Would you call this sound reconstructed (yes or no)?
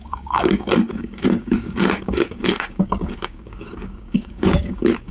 yes